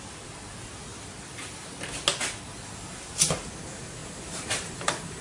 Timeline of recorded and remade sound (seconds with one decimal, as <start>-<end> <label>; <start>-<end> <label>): 0.0-0.9 recorded; 0.9-1.9 remade; 1.9-4.0 recorded; 4.0-5.2 remade